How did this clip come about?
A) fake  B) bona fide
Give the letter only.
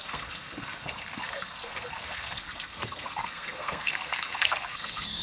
A